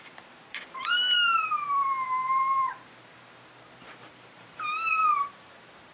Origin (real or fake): fake